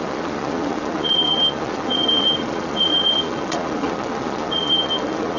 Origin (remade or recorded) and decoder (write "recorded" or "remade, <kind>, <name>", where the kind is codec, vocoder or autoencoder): remade, vocoder, Vocos